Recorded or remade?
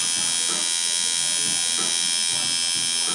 recorded